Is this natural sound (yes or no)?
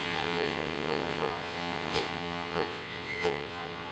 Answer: no